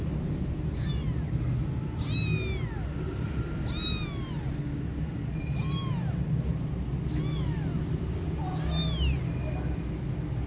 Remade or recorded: recorded